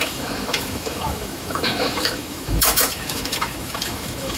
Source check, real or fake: fake